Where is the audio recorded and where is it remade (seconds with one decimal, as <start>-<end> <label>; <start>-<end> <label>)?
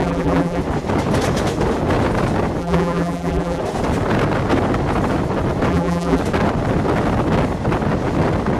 0.0-0.6 remade; 0.6-2.6 recorded; 2.6-3.6 remade; 3.6-5.7 recorded; 5.7-6.2 remade; 6.2-8.6 recorded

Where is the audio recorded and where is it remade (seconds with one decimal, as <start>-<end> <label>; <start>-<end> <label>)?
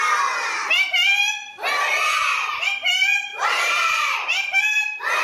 0.0-3.3 recorded; 3.3-4.6 remade; 4.6-5.2 recorded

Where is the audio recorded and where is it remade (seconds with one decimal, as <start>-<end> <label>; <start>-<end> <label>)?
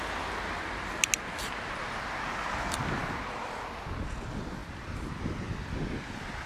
0.0-3.0 recorded; 3.0-3.6 remade; 3.6-4.6 recorded; 4.6-5.2 remade; 5.2-6.5 recorded